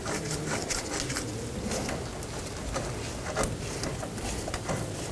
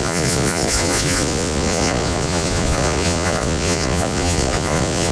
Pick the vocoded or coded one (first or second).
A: second